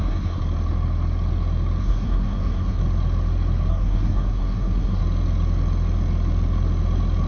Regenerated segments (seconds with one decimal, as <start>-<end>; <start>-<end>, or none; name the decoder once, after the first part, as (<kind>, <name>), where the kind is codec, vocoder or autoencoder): 0.0-0.4 (codec, SNAC); 1.8-2.8; 3.7-5.0